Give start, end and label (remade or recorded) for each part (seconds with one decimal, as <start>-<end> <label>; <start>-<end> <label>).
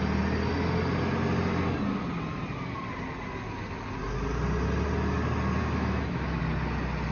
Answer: 0.0-5.6 recorded; 5.6-6.4 remade; 6.4-7.1 recorded